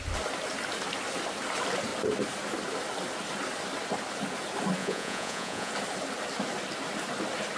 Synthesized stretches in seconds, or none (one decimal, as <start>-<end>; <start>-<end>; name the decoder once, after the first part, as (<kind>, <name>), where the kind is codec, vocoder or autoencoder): 4.8-5.7 (vocoder, Vocos)